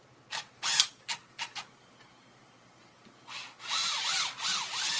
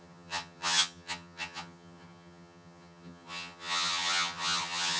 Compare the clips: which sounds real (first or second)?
first